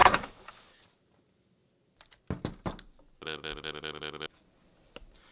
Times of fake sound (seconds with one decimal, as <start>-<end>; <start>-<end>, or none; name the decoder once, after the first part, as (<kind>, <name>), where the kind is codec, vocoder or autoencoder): 0.0-0.5 (autoencoder, DAC-VAE)